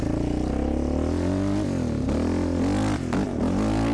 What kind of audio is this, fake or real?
real